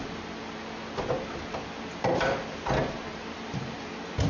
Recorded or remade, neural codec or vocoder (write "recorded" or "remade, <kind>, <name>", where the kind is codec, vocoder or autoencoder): recorded